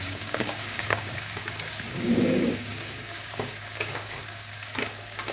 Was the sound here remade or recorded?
remade